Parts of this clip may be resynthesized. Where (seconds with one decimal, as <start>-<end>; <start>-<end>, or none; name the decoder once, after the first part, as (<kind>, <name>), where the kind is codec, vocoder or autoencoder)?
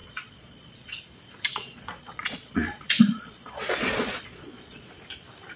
0.0-1.0 (vocoder, Vocos); 1.5-4.9